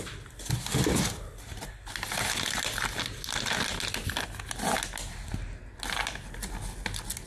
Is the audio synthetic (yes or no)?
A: no